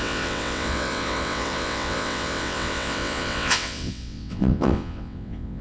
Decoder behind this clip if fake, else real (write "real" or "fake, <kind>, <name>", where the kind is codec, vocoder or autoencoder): fake, vocoder, WaveNeXt